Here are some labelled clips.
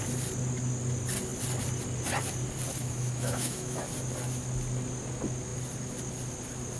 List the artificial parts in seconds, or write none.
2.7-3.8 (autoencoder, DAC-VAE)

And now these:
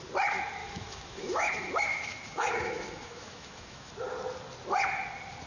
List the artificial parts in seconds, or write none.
0.6-3.9 (autoencoder, DAC-VAE)

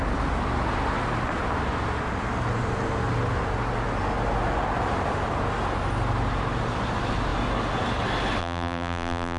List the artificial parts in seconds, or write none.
8.4-9.4 (vocoder, BigVGAN v2)

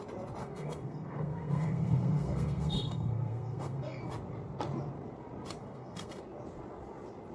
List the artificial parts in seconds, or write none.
0.4-4.0 (codec, SNAC); 5.6-6.2

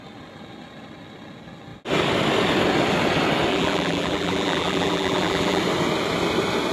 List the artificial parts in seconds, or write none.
3.5-5.6 (vocoder, BigVGAN v2)

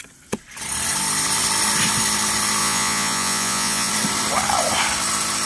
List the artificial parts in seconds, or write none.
2.6-3.9 (vocoder, Vocos)